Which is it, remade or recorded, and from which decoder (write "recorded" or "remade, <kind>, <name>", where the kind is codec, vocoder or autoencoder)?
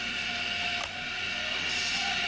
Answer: recorded